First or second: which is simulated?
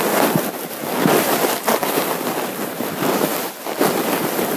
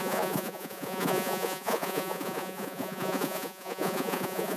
second